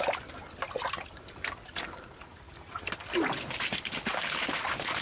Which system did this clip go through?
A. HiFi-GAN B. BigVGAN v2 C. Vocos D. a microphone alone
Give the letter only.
D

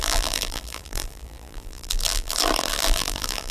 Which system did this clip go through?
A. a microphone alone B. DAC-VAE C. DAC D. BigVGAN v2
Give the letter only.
D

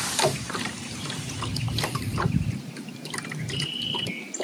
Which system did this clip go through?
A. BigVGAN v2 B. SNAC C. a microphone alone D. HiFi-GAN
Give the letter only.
A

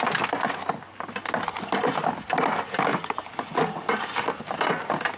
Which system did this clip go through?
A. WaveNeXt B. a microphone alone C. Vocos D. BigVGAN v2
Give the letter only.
B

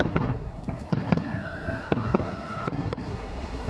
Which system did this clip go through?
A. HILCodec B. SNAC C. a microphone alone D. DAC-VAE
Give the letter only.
B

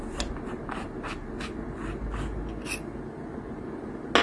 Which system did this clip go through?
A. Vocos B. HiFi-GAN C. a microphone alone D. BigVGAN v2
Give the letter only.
C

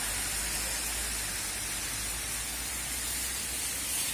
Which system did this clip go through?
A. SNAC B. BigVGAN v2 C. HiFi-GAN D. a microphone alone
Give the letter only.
D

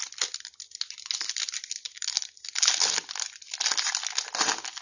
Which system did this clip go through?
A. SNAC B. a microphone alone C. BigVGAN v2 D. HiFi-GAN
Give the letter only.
B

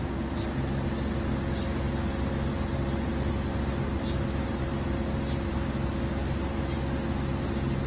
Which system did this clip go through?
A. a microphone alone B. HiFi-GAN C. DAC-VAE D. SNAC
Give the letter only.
A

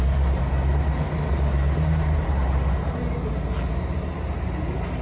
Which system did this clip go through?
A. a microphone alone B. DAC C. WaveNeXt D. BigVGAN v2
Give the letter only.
A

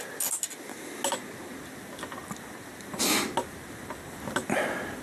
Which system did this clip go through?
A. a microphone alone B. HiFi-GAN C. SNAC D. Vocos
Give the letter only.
A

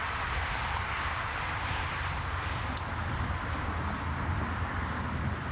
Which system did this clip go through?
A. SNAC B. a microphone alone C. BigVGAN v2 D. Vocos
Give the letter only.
B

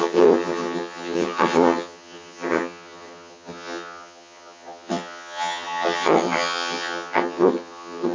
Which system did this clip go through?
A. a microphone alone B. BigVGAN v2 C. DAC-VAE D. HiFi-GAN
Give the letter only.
D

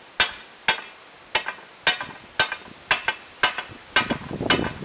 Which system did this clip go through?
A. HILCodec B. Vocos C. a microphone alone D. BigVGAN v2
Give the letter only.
C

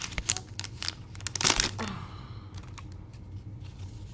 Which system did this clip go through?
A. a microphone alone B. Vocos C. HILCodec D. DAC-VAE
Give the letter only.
A